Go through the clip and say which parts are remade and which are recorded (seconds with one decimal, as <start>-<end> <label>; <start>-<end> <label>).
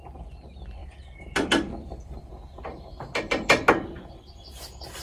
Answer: 0.0-0.8 recorded; 0.8-2.3 remade; 2.3-2.9 recorded; 2.9-3.7 remade; 3.7-5.0 recorded